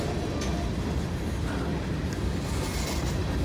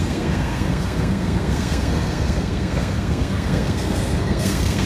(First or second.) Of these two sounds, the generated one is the second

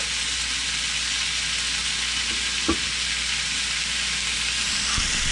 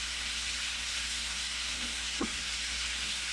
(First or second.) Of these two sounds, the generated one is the second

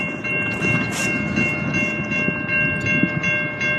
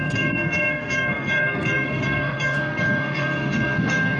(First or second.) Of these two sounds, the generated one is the second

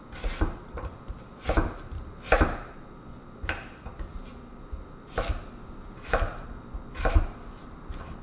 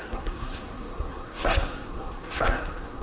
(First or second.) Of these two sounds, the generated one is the second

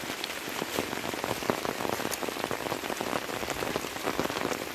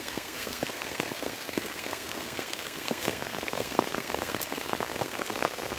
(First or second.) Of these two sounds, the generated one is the second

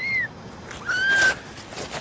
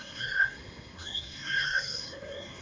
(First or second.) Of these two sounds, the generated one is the second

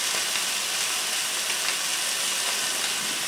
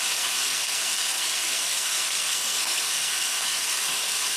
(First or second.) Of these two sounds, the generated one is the second